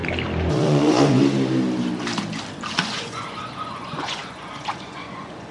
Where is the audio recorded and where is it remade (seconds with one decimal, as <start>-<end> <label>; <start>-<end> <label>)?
0.0-0.5 recorded; 0.5-1.2 remade; 1.2-2.8 recorded; 2.8-5.5 remade